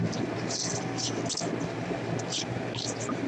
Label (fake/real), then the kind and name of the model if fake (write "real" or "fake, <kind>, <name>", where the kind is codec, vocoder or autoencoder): real